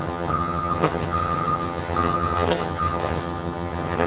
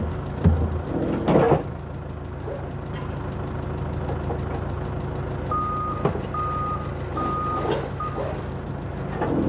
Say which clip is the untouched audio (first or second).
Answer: second